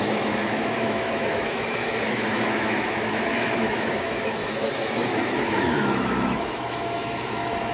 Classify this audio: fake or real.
fake